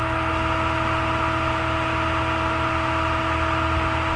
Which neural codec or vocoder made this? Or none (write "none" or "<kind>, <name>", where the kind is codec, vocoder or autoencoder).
none